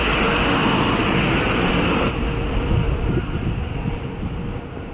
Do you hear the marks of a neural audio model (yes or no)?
no